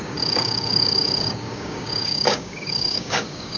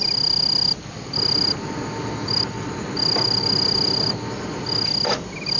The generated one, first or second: first